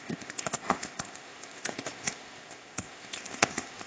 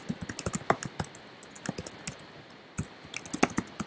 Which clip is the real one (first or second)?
second